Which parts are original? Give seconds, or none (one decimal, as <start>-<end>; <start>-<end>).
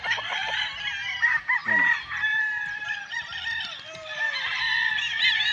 0.4-0.9